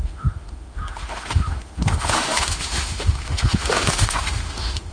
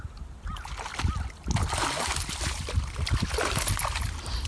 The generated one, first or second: first